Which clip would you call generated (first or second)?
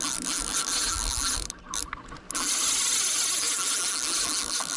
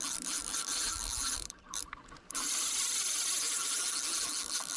second